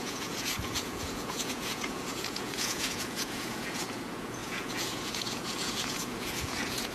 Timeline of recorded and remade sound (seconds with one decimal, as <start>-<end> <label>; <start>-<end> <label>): 0.0-6.9 remade